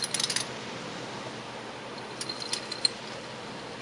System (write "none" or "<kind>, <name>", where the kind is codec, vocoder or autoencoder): none